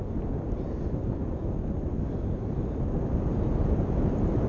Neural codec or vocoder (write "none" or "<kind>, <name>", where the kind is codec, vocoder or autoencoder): none